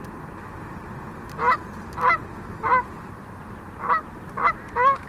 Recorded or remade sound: recorded